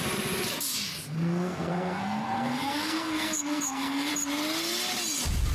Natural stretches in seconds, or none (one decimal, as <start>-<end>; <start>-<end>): 0.0-1.1; 4.1-5.5